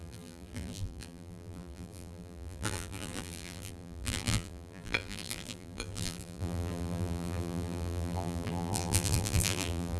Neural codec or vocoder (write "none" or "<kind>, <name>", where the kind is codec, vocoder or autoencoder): vocoder, BigVGAN v2